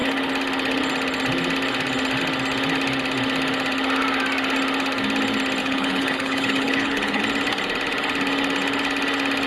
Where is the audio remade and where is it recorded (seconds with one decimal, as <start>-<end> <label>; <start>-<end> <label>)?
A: 0.0-5.6 recorded; 5.6-7.2 remade; 7.2-9.5 recorded